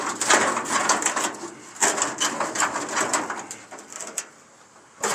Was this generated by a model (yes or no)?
no